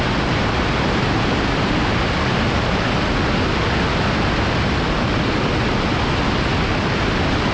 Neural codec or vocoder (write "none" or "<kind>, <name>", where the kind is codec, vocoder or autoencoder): none